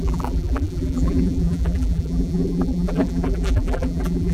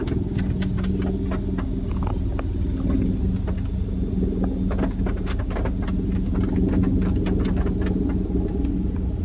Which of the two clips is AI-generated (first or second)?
first